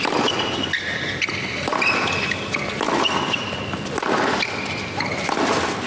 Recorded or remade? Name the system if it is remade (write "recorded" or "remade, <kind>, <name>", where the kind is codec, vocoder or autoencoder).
recorded